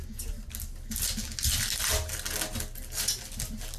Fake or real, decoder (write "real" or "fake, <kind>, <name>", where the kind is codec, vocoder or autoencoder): real